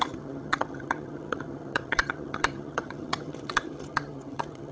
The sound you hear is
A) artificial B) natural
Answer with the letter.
A